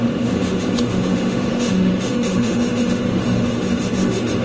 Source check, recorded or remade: remade